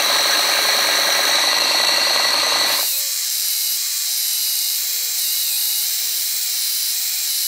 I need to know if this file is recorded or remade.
remade